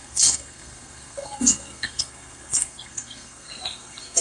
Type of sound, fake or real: fake